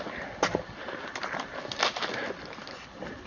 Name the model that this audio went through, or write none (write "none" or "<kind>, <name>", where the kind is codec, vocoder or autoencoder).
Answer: none